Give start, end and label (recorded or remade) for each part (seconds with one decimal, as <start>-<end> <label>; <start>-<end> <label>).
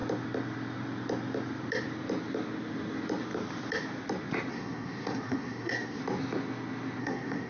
0.0-4.5 recorded; 4.5-6.0 remade; 6.0-7.0 recorded; 7.0-7.5 remade